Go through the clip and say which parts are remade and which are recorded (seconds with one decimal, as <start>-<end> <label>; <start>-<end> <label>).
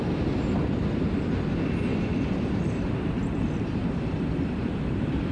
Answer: 0.0-1.9 recorded; 1.9-5.3 remade